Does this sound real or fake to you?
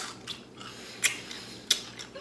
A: real